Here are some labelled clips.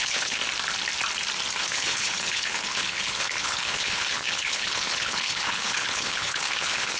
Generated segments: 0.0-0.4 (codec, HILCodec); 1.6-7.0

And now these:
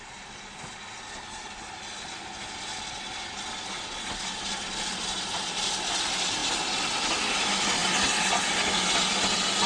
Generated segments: none

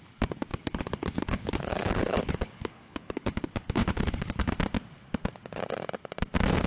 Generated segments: 0.5-4.5 (codec, HILCodec)

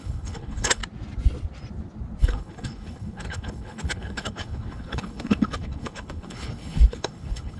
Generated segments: 0.0-0.8 (codec, HILCodec); 2.2-7.6

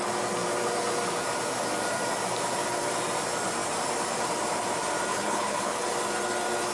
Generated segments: 5.1-5.8 (codec, HILCodec)

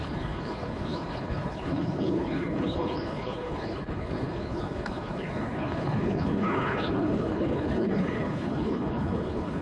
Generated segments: 0.0-9.6 (codec, HILCodec)

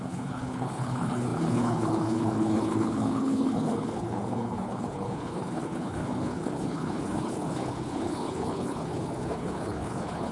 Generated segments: 0.0-10.3 (codec, HILCodec)